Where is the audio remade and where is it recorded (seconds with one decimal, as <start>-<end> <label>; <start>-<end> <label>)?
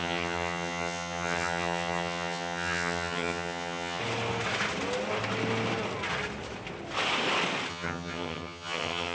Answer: 0.0-4.0 remade; 4.0-7.7 recorded; 7.7-9.1 remade